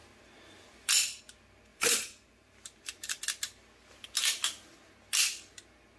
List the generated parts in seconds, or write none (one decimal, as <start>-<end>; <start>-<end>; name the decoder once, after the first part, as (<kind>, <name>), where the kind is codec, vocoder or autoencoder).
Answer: 1.7-3.2 (vocoder, BigVGAN v2)